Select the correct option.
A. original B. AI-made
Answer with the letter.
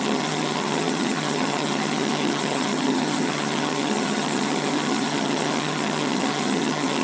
B